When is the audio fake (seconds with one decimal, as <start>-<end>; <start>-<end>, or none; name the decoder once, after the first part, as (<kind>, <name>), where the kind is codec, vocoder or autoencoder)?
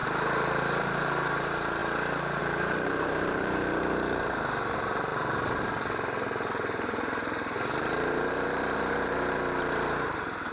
0.8-1.8 (vocoder, BigVGAN v2); 2.4-10.5